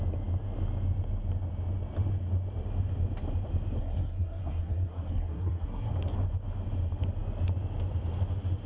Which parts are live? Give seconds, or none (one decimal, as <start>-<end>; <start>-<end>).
0.0-3.8; 5.9-8.7